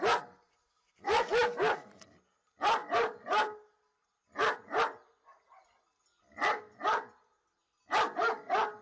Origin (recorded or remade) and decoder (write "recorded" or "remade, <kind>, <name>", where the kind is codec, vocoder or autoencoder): recorded